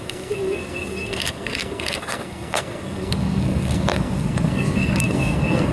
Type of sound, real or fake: fake